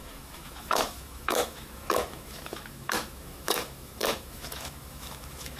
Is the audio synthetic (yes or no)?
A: yes